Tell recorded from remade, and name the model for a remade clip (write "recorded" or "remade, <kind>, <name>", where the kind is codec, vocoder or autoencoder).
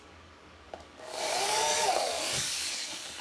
remade, codec, DAC